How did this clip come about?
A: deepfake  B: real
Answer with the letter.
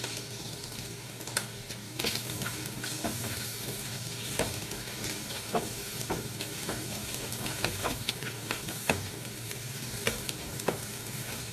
A